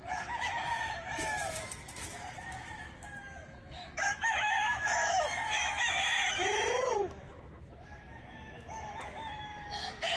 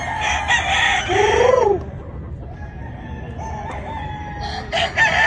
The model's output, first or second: first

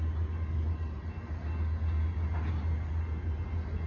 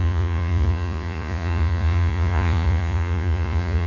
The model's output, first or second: second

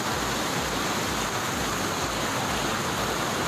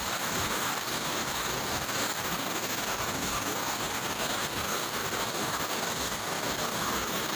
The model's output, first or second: second